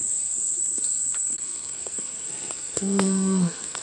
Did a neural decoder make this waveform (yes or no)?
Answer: yes